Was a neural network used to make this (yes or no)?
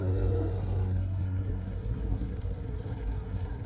yes